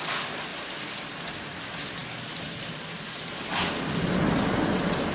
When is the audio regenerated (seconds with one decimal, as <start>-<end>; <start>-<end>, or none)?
0.0-0.5; 1.3-2.0; 4.2-5.1